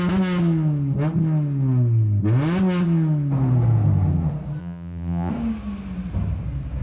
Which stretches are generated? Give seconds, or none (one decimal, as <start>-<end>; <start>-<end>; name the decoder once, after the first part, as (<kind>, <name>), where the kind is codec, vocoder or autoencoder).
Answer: 4.6-5.3 (vocoder, BigVGAN v2)